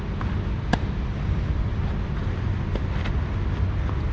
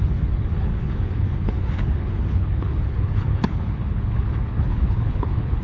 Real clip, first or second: first